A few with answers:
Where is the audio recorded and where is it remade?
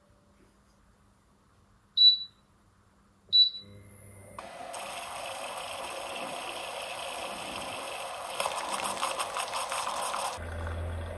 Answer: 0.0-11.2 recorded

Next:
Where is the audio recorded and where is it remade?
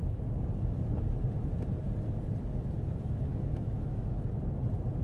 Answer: 0.0-3.3 recorded; 3.3-4.2 remade; 4.2-5.0 recorded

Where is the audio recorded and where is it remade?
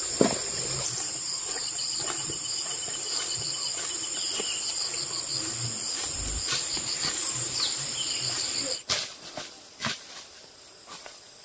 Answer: 0.0-11.4 remade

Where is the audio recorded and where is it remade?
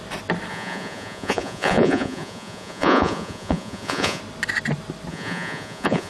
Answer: 0.0-0.5 recorded; 0.5-4.2 remade; 4.2-5.1 recorded; 5.1-6.1 remade